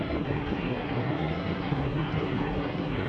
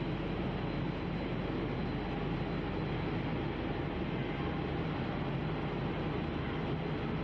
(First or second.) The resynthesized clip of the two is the first